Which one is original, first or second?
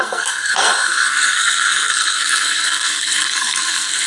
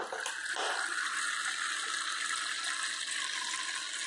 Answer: second